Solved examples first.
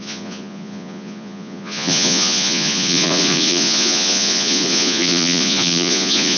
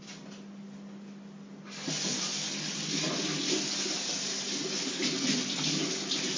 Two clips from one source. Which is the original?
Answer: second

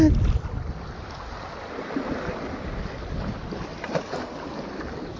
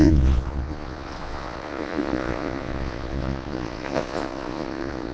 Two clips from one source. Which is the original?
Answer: first